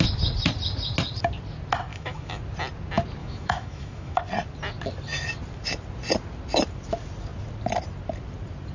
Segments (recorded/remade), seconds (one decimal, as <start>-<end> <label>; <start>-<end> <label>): 0.0-1.9 recorded; 1.9-2.4 remade; 2.4-3.2 recorded; 3.2-4.2 remade; 4.2-8.7 recorded